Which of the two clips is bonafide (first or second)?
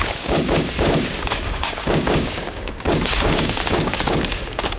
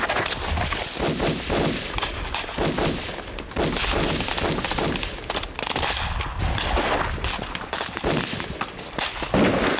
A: second